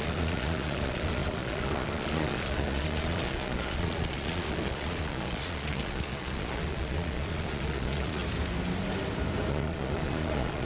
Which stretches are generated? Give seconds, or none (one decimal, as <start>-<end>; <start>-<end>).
0.0-8.2; 9.5-10.7